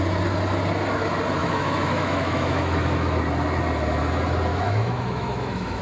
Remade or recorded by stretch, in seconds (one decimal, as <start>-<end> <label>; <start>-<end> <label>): 0.0-1.4 recorded; 1.4-3.2 remade; 3.2-4.5 recorded; 4.5-5.8 remade